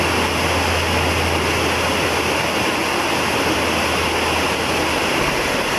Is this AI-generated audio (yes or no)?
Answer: no